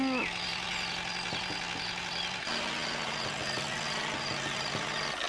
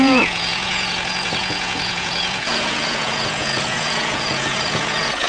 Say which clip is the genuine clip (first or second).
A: first